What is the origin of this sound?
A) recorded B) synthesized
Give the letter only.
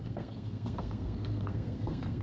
B